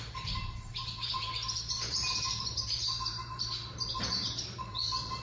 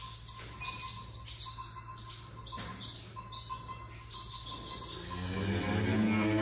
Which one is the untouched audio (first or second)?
second